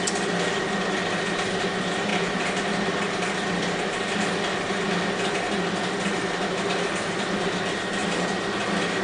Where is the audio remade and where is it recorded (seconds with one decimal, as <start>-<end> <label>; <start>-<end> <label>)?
0.0-9.0 recorded